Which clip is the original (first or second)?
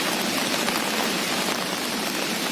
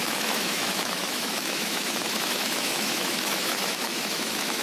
first